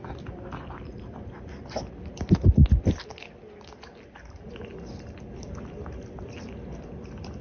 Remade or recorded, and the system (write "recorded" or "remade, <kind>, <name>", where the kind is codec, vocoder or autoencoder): recorded